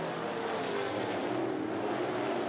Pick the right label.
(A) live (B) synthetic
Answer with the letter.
A